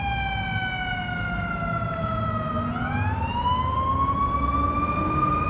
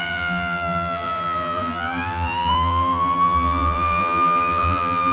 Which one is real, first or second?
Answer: first